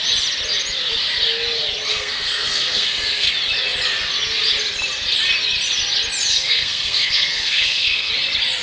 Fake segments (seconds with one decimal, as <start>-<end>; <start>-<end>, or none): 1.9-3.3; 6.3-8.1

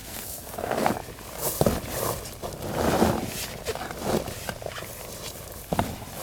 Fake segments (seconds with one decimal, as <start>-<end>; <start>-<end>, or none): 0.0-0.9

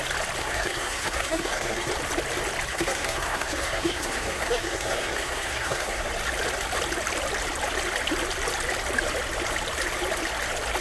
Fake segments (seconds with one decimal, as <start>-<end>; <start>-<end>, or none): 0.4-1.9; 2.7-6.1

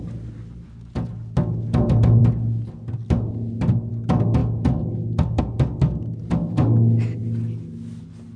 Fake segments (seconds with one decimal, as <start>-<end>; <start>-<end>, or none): none